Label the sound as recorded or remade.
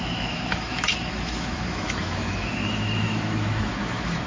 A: remade